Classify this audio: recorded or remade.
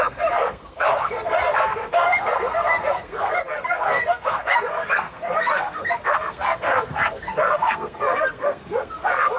remade